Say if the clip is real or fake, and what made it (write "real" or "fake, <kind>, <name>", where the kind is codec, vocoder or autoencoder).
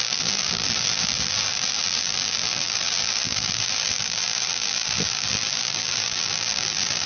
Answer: fake, vocoder, BigVGAN v2